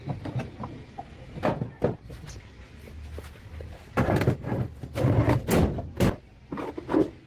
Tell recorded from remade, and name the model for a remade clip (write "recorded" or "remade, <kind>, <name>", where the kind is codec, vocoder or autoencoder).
recorded